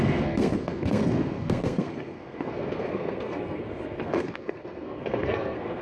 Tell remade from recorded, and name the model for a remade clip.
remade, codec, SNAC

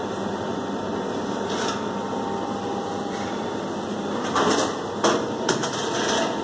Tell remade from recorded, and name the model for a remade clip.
remade, vocoder, BigVGAN v2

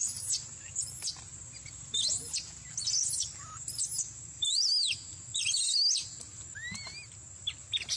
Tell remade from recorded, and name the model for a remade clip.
recorded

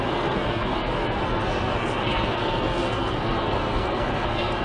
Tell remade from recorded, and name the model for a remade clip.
remade, codec, SNAC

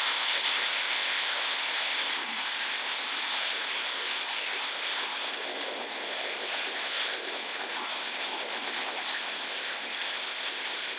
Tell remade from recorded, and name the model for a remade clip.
remade, codec, ZipCodec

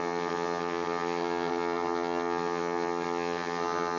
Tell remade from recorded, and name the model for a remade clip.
remade, vocoder, HiFi-GAN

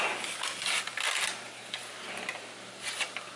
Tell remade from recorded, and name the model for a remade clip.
recorded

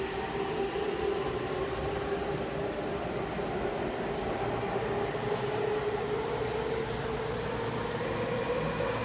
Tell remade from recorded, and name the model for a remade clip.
recorded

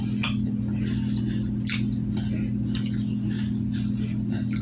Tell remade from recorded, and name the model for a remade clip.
recorded